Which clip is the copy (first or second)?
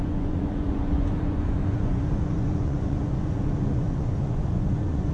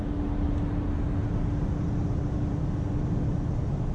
first